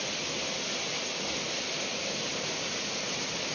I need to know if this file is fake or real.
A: real